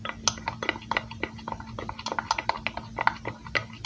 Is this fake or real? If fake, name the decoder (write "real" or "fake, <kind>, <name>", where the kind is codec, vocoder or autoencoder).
real